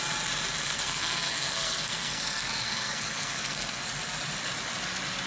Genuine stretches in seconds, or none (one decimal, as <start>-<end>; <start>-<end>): 0.0-0.6; 3.8-5.3